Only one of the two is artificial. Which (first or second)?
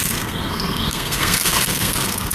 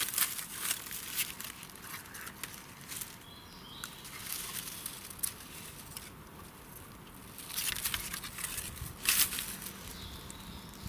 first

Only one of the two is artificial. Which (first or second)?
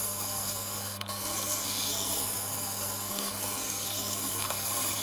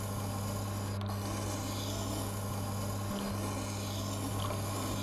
first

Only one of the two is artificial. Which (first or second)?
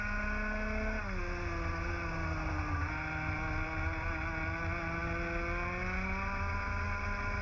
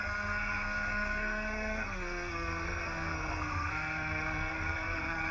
second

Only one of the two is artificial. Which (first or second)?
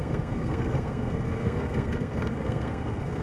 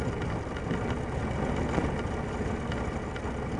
first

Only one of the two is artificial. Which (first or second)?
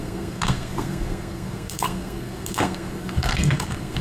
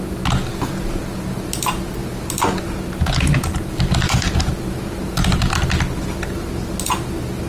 first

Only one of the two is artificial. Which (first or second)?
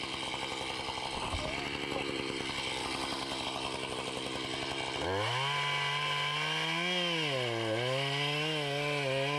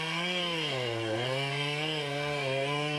second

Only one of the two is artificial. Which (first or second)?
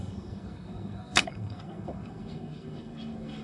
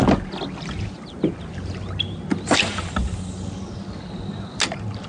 first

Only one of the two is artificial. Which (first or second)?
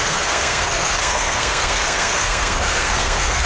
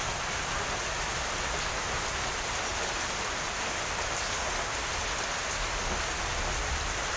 first